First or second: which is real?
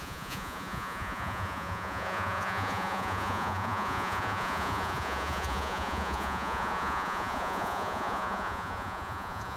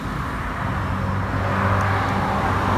second